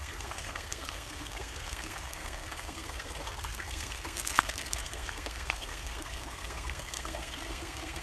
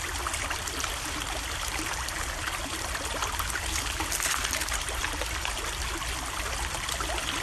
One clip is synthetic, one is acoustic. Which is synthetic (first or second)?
first